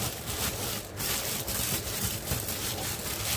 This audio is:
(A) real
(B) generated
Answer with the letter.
A